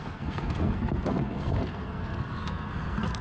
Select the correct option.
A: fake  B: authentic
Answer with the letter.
A